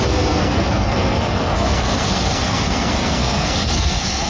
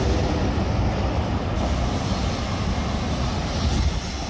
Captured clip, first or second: second